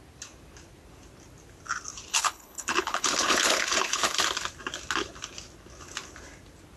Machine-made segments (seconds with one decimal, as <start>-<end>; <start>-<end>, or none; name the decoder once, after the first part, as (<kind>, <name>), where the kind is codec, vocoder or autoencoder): 2.1-4.2 (codec, HILCodec)